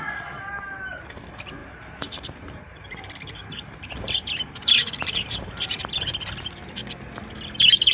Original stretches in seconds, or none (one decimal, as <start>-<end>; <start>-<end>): 0.0-1.6; 5.8-7.9